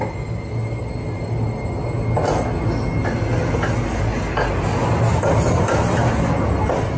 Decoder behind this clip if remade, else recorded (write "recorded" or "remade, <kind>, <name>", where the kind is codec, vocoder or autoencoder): recorded